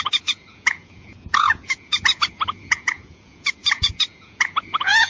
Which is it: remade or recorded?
remade